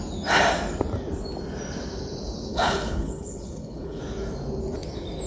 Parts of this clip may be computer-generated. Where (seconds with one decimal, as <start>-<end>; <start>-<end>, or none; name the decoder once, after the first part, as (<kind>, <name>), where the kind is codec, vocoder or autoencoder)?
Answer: 2.5-4.0 (codec, HILCodec)